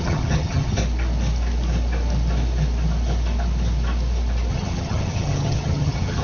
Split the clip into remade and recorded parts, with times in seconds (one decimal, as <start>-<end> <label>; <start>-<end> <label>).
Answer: 0.0-0.8 remade; 0.8-4.5 recorded; 4.5-6.2 remade